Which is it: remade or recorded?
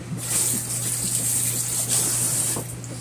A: recorded